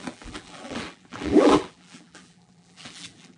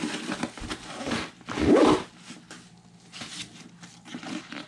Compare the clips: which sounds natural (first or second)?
second